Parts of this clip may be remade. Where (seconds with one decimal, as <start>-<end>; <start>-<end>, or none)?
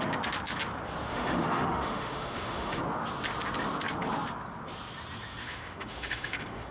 1.1-2.8; 5.4-6.7